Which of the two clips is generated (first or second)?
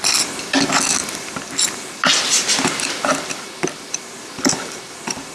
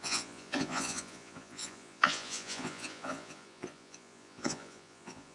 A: second